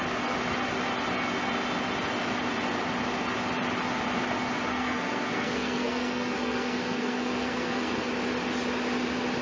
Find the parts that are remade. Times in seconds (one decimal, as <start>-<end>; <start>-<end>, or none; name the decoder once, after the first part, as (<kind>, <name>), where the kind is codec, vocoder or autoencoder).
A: 4.7-8.1 (codec, SNAC)